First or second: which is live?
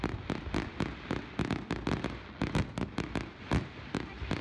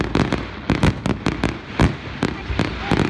first